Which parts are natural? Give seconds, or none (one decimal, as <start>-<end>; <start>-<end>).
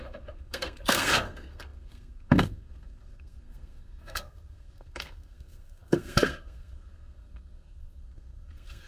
none